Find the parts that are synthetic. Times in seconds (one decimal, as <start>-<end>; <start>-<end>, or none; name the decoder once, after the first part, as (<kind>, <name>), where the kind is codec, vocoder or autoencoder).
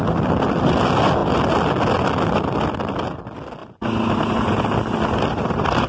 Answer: 3.6-4.7 (vocoder, BigVGAN v2); 5.3-5.9